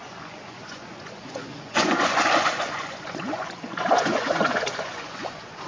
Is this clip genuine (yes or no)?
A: no